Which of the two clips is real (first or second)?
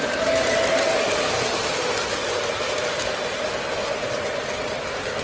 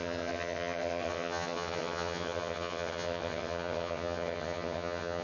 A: first